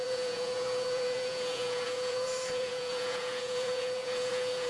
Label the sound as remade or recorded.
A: remade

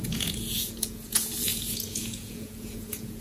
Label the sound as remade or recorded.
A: remade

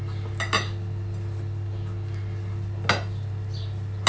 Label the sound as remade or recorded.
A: recorded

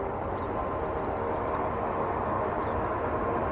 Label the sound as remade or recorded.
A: recorded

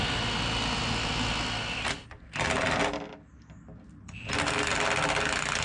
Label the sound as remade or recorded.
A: recorded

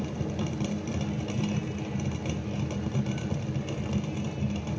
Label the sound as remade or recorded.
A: recorded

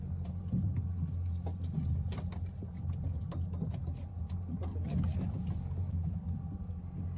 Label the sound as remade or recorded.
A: recorded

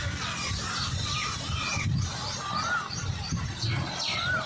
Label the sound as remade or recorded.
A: recorded